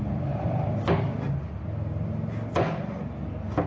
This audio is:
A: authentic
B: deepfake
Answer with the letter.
A